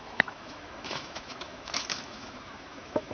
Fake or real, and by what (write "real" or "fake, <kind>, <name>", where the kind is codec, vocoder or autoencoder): fake, autoencoder, DAC-VAE